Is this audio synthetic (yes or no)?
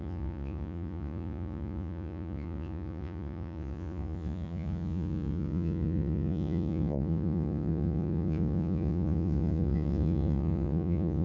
yes